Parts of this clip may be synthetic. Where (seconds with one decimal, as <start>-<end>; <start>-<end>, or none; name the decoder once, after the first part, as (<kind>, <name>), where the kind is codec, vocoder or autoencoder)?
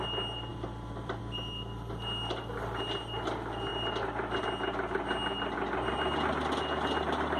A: 0.5-1.2 (vocoder, BigVGAN v2); 3.7-4.4